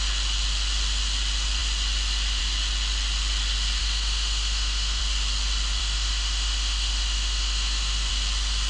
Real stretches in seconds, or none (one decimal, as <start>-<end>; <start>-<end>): 0.0-3.8; 5.0-5.8; 8.1-8.7